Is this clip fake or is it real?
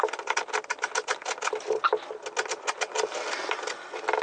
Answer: real